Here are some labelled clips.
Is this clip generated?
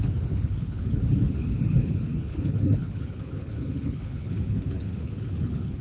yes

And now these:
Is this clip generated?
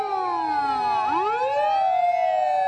no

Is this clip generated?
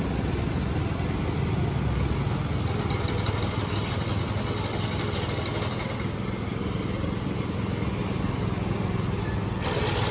no